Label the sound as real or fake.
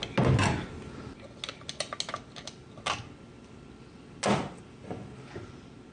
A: real